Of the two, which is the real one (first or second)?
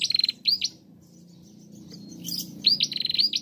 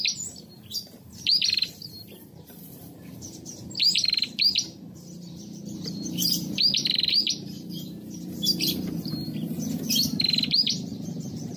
first